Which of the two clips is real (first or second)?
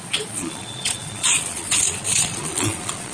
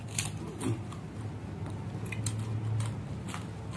second